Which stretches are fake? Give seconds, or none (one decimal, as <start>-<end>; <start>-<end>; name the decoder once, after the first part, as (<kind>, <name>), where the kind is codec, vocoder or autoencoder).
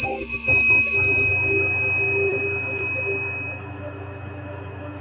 0.0-5.0 (autoencoder, DAC-VAE)